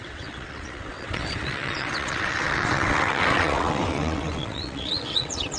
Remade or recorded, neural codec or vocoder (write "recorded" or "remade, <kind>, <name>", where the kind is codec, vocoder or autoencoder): remade, vocoder, WaveNeXt